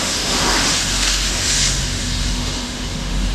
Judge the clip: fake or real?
fake